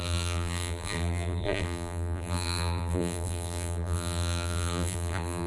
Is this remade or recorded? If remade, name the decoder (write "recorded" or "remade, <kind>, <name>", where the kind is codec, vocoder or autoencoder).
remade, vocoder, BigVGAN v2